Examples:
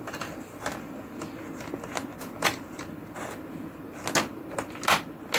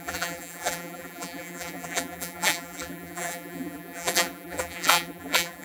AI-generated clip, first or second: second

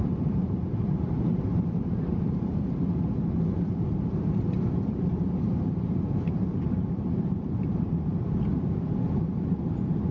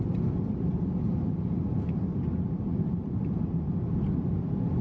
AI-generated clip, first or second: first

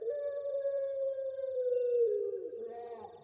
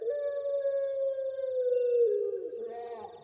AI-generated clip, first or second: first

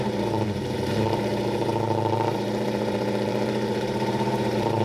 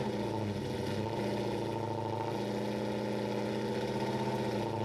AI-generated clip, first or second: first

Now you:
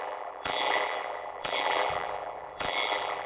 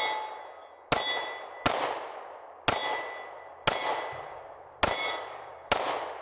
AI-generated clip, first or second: first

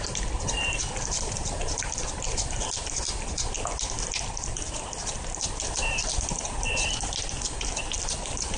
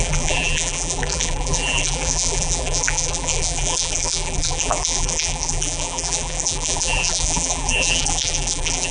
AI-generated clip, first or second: second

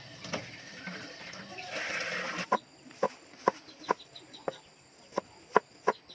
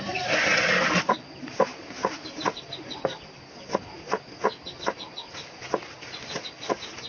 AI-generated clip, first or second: first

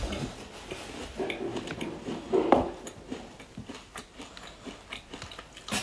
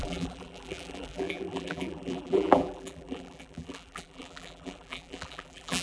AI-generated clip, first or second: second